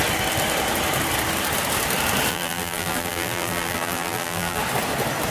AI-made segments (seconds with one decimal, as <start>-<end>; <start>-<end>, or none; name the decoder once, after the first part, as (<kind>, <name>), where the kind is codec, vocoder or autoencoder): 2.3-4.6 (vocoder, BigVGAN v2)

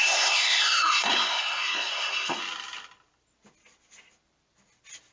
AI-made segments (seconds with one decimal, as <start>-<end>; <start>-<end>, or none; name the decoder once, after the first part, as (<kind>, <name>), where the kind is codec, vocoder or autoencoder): 0.0-2.4 (codec, SNAC)